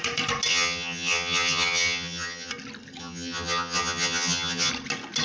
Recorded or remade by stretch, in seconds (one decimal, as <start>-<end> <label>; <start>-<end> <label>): 0.0-0.5 recorded; 0.5-2.5 remade; 2.5-3.0 recorded; 3.0-4.7 remade; 4.7-5.2 recorded